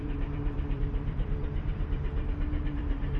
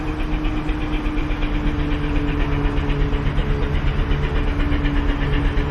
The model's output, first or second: first